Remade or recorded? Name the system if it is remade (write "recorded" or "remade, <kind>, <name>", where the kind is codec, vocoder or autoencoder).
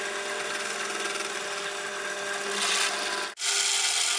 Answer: recorded